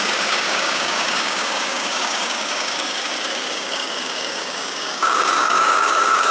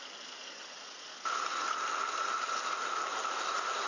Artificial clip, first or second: first